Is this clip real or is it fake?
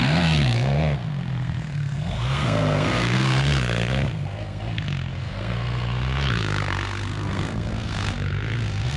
fake